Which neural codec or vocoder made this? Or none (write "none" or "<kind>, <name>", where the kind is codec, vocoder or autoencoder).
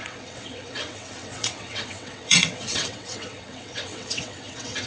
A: vocoder, WaveNeXt